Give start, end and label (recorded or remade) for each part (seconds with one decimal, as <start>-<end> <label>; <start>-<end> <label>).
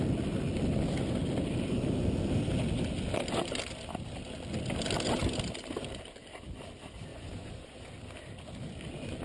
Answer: 0.0-7.1 recorded; 7.1-7.8 remade; 7.8-9.2 recorded